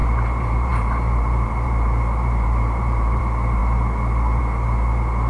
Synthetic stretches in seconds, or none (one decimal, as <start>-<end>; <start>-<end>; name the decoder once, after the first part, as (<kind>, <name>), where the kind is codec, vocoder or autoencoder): 0.0-3.2 (vocoder, BigVGAN v2)